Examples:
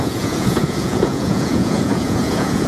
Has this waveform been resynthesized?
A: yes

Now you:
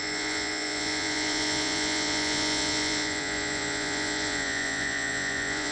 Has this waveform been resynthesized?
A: yes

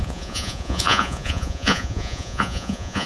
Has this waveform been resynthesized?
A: yes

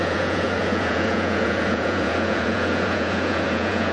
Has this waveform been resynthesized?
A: yes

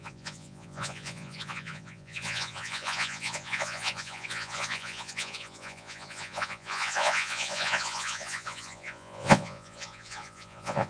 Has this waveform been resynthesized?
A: yes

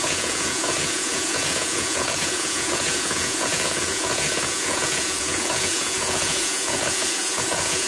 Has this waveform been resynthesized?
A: yes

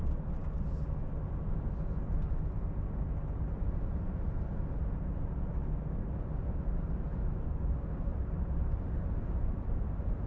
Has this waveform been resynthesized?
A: no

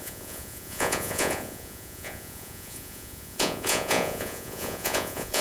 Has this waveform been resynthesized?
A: yes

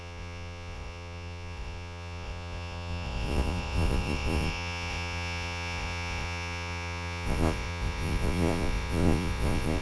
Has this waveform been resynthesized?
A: yes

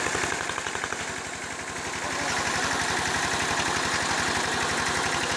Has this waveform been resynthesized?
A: no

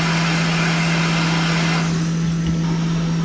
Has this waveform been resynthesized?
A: no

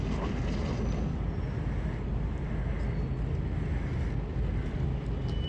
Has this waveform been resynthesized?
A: no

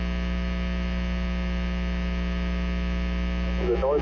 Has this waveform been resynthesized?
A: no